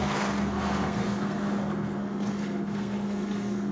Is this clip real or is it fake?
fake